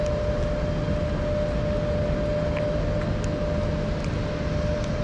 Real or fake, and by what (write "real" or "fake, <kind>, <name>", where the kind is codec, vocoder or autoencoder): real